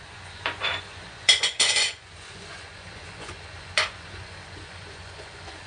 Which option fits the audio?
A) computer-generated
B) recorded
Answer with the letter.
A